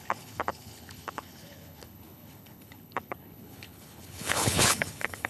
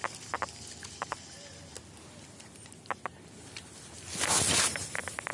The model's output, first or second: first